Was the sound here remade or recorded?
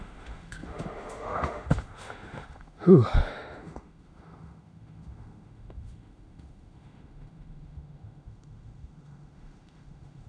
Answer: remade